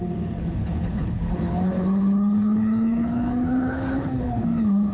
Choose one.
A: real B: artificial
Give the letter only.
B